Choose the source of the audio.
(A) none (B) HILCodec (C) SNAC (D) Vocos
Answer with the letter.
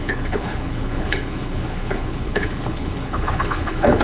B